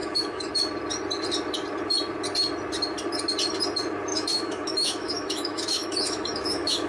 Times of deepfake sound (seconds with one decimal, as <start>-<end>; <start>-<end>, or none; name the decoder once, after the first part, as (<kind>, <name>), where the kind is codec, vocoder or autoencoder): 0.0-0.5 (autoencoder, DAC-VAE); 4.1-6.9